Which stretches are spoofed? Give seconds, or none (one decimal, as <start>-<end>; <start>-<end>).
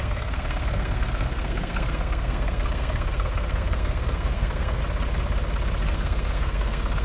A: 0.0-4.8; 5.8-7.0